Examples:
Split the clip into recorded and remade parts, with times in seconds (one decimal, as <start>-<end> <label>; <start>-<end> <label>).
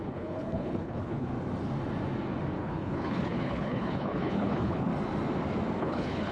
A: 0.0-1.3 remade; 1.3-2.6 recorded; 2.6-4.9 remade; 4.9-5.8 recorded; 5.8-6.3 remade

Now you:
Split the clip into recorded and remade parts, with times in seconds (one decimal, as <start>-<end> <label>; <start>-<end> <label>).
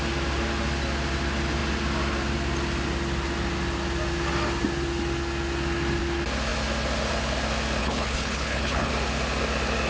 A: 0.0-7.8 recorded; 7.8-8.9 remade; 8.9-9.9 recorded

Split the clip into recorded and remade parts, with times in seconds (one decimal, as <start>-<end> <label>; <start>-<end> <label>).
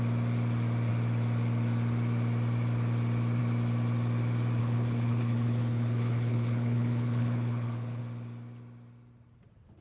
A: 0.0-4.6 recorded; 4.6-8.0 remade; 8.0-9.8 recorded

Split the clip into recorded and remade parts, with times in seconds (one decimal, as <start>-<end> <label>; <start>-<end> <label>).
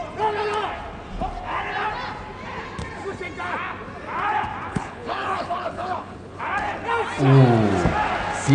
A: 0.0-4.7 recorded; 4.7-6.4 remade; 6.4-8.5 recorded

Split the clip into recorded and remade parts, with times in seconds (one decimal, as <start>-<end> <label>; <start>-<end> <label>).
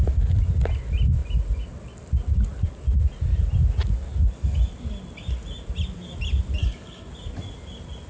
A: 0.0-6.6 recorded; 6.6-7.1 remade; 7.1-8.1 recorded